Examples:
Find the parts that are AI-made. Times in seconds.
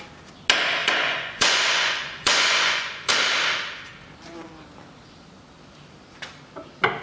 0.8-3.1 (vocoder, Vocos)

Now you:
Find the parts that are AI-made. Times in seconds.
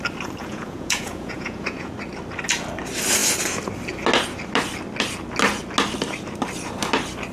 0.4-1.9 (vocoder, Vocos)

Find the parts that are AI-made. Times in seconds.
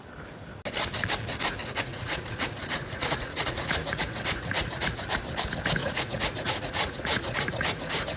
1.6-4.9 (vocoder, Vocos); 5.8-8.2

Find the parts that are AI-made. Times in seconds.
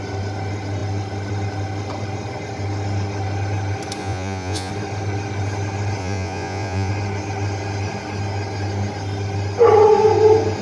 4.0-4.7 (vocoder, Vocos); 6.0-6.9